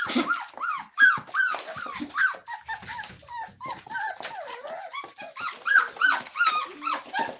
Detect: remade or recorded recorded